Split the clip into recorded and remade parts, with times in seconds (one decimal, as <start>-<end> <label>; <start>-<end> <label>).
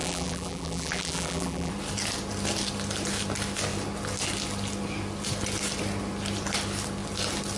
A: 0.0-1.7 remade; 1.7-7.6 recorded